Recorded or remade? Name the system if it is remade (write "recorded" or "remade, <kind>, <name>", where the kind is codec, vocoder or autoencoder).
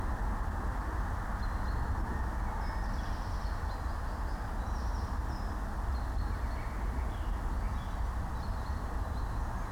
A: recorded